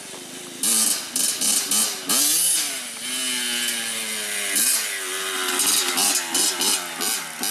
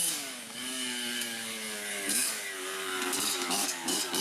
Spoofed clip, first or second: second